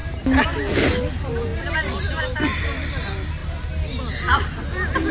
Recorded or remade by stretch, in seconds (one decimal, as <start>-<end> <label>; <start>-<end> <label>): 0.0-5.1 recorded